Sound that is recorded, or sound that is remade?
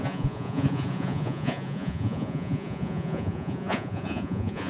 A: remade